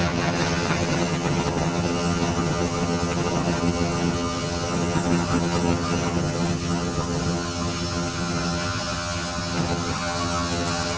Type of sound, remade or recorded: remade